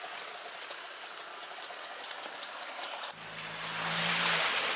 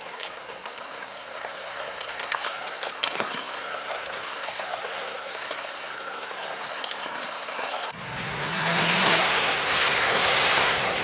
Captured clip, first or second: first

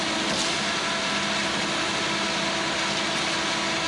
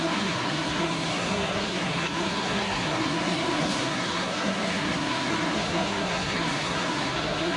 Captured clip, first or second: first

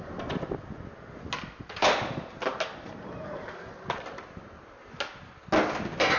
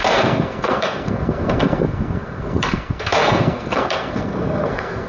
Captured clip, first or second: first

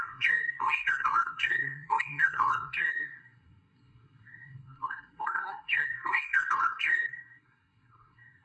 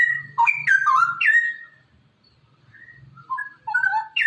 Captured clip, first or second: second